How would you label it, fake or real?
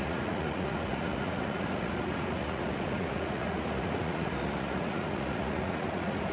fake